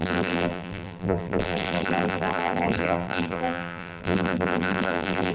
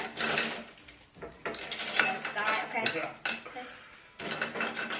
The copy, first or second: first